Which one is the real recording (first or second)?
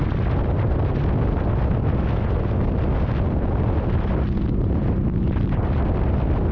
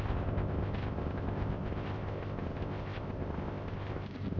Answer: first